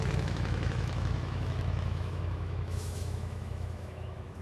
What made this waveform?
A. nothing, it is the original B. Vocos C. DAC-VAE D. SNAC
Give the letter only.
C